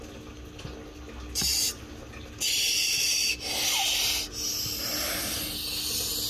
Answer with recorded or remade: recorded